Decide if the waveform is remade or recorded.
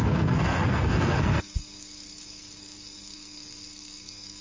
remade